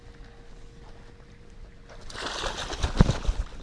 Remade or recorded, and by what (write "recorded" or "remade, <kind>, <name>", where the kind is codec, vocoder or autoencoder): recorded